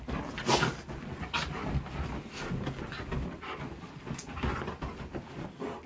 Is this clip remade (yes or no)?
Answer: no